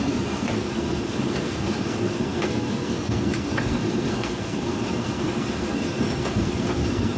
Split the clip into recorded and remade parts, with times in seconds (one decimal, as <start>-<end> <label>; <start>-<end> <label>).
0.0-7.2 remade